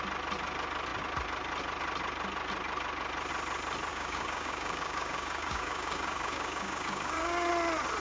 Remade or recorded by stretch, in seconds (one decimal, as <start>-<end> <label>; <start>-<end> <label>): 0.0-3.9 recorded; 3.9-7.5 remade; 7.5-8.0 recorded